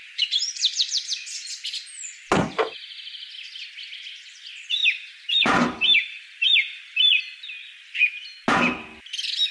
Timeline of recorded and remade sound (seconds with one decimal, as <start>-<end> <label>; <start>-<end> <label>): 0.0-1.5 remade; 1.5-4.8 recorded; 4.8-7.2 remade; 7.2-9.5 recorded

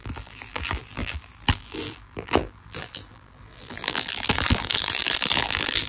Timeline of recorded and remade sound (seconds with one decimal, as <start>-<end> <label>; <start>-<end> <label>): 0.0-5.9 remade

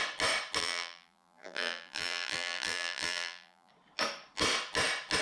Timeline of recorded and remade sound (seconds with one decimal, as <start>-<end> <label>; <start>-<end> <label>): 0.0-0.6 recorded; 0.6-3.7 remade; 3.7-5.2 recorded

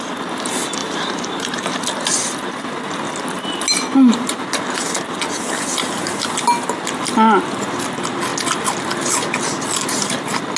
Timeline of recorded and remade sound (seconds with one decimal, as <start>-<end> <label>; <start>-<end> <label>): 0.0-0.8 recorded; 0.8-1.7 remade; 1.7-10.6 recorded

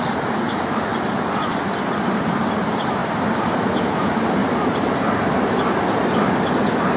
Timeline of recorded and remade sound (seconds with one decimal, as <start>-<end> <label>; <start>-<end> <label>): 0.0-0.9 remade; 0.9-1.9 recorded; 1.9-7.0 remade

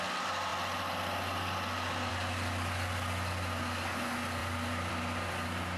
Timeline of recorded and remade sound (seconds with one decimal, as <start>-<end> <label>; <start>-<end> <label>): 0.0-4.4 recorded; 4.4-4.9 remade; 4.9-5.8 recorded

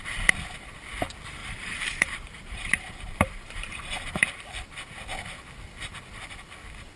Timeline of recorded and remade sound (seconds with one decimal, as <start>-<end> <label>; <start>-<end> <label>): 0.0-1.4 recorded; 1.4-4.4 remade; 4.4-7.0 recorded